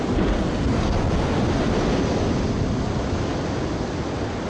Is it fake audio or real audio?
real